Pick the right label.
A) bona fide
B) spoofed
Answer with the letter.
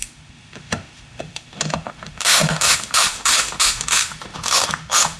B